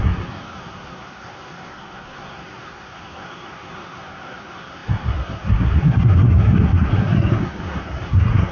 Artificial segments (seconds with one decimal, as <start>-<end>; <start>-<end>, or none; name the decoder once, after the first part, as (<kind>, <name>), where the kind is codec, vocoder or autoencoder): 0.0-8.5 (codec, SNAC)